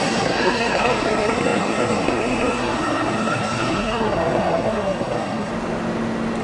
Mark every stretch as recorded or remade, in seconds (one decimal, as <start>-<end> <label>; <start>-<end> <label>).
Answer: 0.0-5.5 remade; 5.5-6.4 recorded